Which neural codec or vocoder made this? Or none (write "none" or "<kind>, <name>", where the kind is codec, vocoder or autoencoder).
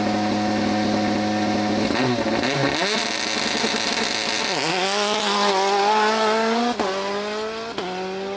none